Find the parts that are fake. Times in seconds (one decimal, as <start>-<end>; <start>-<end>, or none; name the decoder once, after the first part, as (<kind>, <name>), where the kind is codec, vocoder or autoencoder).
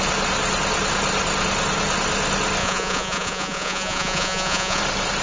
2.6-4.8 (vocoder, Vocos)